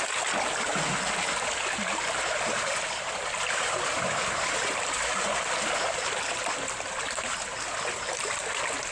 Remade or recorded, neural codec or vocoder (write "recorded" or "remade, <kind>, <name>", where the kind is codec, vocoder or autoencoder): recorded